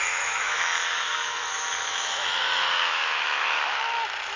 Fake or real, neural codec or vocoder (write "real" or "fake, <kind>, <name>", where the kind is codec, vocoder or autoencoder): fake, autoencoder, DAC-VAE